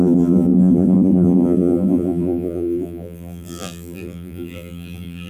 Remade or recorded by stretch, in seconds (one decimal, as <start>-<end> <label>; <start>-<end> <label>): 0.0-5.3 remade